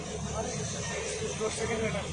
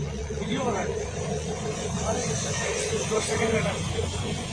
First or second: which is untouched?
first